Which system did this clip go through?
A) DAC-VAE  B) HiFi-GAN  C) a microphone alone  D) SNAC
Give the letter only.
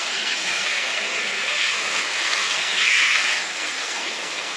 D